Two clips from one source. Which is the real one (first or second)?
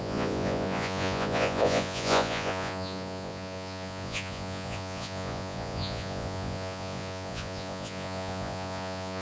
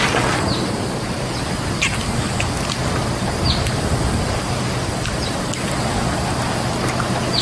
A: second